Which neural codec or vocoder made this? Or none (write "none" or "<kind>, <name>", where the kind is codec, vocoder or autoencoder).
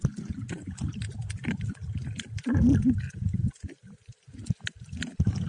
none